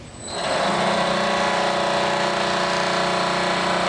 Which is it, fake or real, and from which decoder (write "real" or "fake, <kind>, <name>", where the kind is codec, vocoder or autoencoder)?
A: real